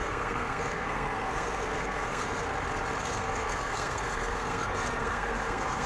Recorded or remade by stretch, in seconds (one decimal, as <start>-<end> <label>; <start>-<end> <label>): 0.0-2.5 remade; 2.5-3.0 recorded; 3.0-5.9 remade